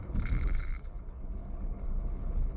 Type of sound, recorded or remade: remade